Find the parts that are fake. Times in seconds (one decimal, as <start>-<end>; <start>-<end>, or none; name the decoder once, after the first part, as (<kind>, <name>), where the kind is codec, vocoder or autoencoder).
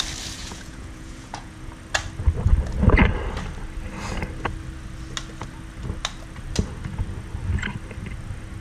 0.4-1.7 (vocoder, Vocos)